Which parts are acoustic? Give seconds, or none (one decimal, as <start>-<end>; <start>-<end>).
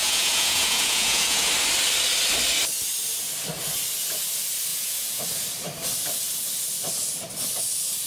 1.5-4.7; 5.2-8.1